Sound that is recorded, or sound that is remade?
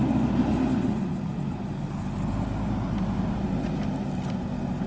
recorded